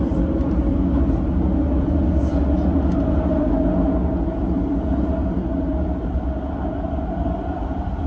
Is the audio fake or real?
real